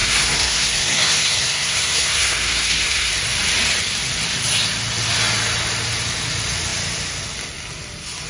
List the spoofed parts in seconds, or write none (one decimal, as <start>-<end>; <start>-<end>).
0.0-3.1